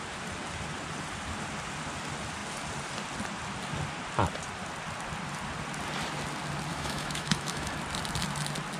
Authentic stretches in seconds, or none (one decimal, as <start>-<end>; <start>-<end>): 0.0-6.7; 7.7-8.8